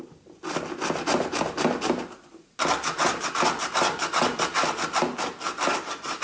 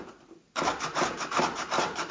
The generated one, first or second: second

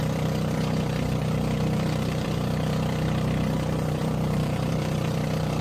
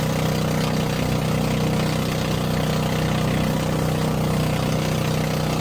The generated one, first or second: first